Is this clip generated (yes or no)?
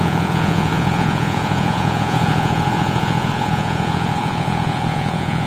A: yes